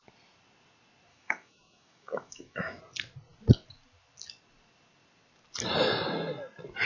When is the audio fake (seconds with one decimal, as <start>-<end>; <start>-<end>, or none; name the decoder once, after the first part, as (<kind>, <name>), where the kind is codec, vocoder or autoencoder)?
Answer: 1.1-2.8 (autoencoder, DAC-VAE)